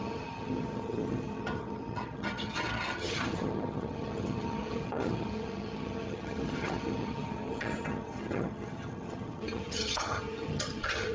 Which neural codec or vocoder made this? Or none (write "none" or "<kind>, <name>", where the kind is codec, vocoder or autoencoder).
vocoder, HiFi-GAN